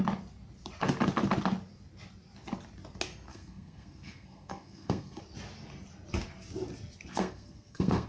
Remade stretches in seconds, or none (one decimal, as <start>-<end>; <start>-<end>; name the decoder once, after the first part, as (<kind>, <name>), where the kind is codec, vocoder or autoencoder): 3.3-5.2 (codec, SNAC); 7.1-8.1